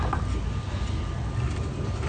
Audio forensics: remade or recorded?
recorded